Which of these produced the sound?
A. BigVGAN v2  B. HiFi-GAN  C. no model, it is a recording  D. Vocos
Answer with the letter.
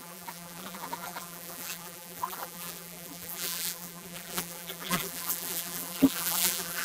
A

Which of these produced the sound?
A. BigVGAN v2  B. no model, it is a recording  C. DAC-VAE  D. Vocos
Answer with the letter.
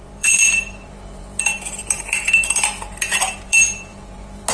A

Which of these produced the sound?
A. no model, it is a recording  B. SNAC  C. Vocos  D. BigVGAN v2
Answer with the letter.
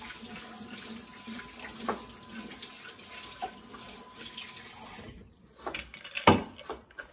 A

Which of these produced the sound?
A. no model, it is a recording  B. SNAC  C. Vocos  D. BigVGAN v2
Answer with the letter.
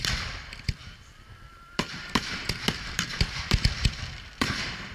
D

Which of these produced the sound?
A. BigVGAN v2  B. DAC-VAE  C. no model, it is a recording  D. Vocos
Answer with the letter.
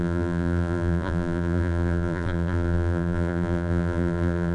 A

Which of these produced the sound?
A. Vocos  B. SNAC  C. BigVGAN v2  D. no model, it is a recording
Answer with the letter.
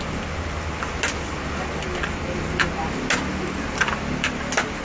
D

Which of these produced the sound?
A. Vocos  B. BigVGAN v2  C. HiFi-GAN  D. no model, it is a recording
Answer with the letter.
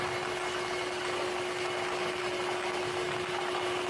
D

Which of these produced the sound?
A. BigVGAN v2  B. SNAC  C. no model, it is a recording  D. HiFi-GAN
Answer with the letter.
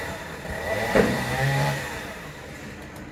A